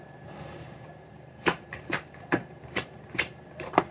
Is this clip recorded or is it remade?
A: remade